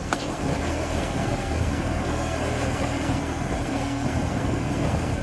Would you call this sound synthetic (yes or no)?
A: yes